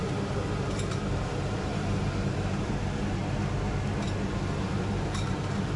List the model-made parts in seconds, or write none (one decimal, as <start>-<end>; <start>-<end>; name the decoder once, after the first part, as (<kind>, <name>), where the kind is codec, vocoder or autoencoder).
0.0-3.2 (vocoder, BigVGAN v2); 4.6-5.8

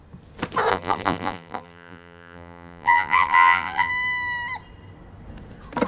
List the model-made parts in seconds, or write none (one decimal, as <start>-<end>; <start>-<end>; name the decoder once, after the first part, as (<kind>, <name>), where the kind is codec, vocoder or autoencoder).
0.7-3.9 (vocoder, BigVGAN v2)

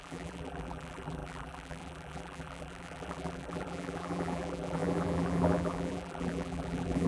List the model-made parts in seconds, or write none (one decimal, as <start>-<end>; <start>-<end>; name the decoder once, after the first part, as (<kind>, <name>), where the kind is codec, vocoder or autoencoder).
0.0-7.1 (vocoder, BigVGAN v2)

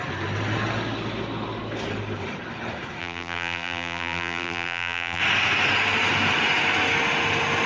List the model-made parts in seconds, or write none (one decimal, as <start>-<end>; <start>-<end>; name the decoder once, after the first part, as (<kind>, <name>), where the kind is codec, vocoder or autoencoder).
3.0-5.2 (vocoder, BigVGAN v2)

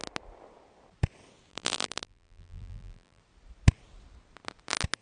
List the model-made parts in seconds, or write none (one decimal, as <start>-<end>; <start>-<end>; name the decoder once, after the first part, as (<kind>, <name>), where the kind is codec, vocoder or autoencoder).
1.5-3.2 (vocoder, BigVGAN v2)

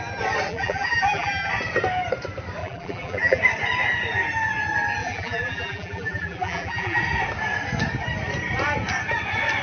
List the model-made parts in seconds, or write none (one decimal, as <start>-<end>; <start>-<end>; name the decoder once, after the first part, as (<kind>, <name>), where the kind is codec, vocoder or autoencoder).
0.5-1.5 (vocoder, BigVGAN v2); 2.6-3.4; 5.0-7.0